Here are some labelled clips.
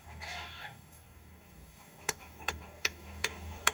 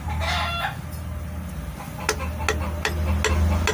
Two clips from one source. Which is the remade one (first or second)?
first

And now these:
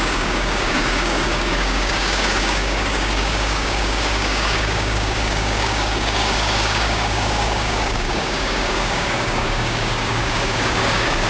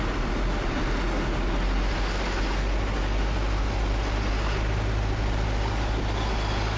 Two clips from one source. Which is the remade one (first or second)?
first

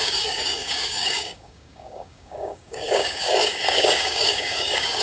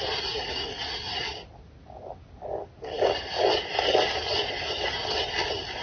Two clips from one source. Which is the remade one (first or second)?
first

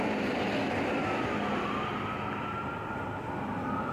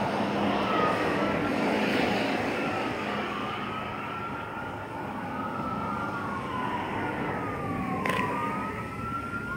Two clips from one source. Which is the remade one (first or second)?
second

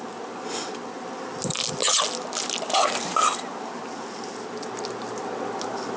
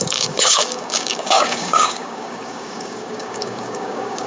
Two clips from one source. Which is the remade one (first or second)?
second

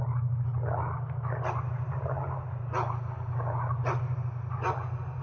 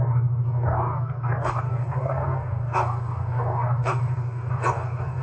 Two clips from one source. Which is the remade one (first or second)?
second